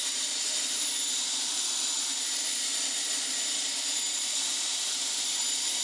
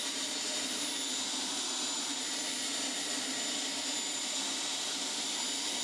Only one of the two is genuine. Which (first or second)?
second